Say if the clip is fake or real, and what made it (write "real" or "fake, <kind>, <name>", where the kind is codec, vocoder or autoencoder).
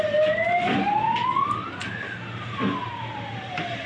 real